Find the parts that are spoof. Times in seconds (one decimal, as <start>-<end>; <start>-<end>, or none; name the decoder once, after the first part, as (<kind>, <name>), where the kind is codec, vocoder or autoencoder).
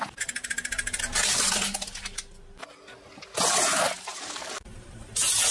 4.1-5.1 (vocoder, BigVGAN v2)